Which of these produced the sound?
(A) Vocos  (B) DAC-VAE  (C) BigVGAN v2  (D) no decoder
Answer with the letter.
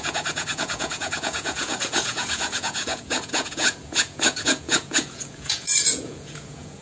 A